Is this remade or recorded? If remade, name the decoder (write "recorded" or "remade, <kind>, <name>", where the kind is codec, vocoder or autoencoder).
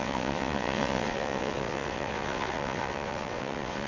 remade, vocoder, WaveNeXt